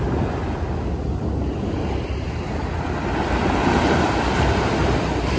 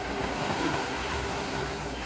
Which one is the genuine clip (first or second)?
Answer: first